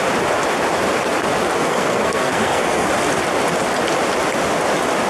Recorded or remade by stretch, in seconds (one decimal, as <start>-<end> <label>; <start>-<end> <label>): 0.0-1.6 recorded; 1.6-2.9 remade; 2.9-5.1 recorded